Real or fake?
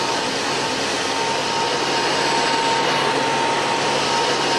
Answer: real